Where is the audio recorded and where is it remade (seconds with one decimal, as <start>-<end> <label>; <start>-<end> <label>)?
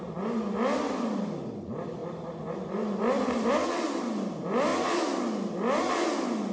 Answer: 0.0-6.5 recorded